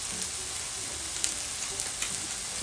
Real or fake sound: real